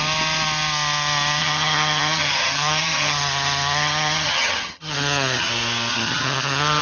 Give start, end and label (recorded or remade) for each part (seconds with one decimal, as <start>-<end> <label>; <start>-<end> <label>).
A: 0.0-1.4 recorded; 1.4-5.5 remade; 5.5-5.9 recorded; 5.9-6.8 remade